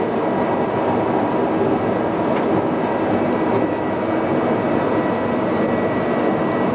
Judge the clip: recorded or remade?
recorded